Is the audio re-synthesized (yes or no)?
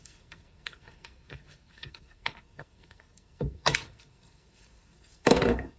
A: yes